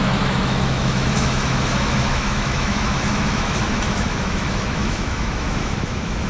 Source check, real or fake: fake